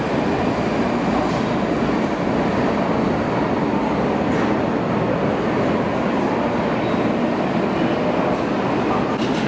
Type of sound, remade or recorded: recorded